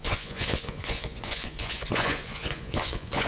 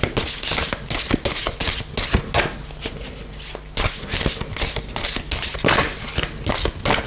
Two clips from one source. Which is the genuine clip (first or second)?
second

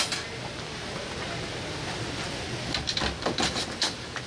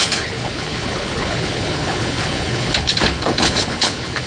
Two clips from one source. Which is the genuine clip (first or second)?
first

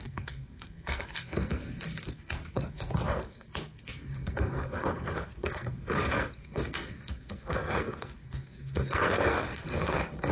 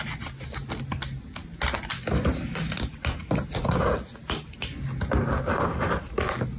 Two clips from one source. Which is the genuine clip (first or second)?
second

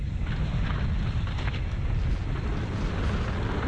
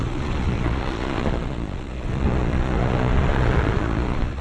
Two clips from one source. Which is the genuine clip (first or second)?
first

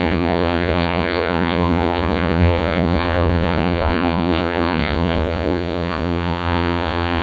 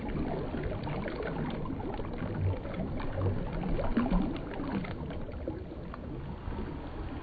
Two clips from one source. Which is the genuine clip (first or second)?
second